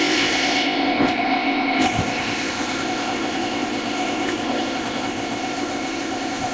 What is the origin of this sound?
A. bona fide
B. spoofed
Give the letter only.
B